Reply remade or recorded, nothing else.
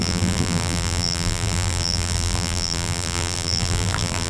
remade